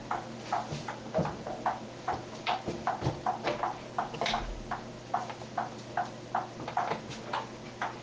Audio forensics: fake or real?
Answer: real